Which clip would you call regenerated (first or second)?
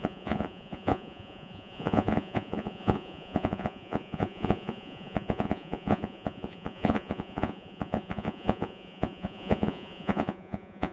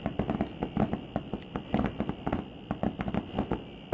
first